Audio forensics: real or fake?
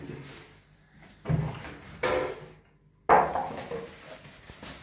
real